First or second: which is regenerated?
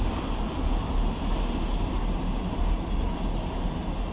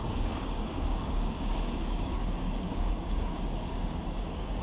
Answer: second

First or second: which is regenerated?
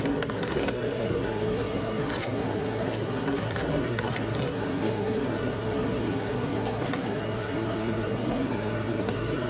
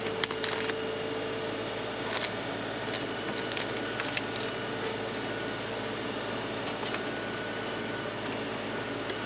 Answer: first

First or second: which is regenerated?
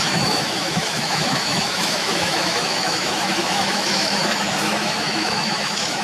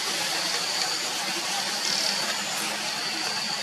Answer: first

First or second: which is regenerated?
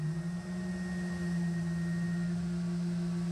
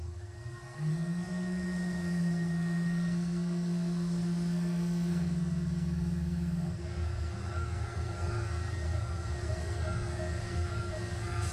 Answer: second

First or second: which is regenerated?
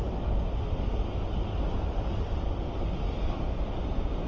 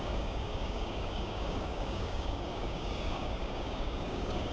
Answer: second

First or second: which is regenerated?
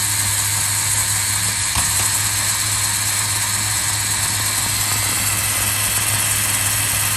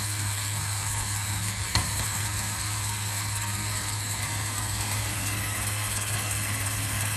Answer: second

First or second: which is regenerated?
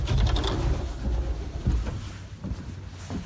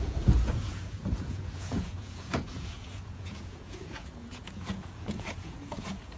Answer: second